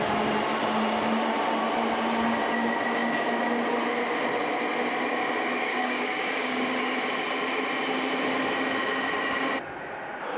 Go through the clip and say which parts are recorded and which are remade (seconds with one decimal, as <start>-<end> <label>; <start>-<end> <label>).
0.0-5.7 recorded; 5.7-6.8 remade; 6.8-10.4 recorded